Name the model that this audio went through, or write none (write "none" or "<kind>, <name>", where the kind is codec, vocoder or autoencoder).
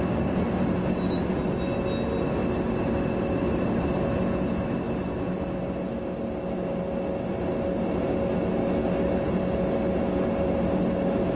none